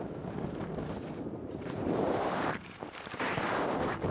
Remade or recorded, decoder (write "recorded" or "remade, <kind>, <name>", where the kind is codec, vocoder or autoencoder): remade, vocoder, BigVGAN v2